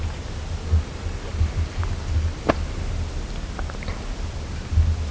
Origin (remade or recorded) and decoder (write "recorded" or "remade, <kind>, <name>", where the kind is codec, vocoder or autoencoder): recorded